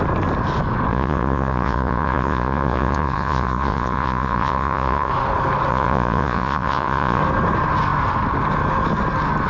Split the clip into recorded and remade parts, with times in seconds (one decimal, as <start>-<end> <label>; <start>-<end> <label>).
0.0-0.9 recorded; 0.9-5.1 remade; 5.1-5.7 recorded; 5.7-7.2 remade; 7.2-9.5 recorded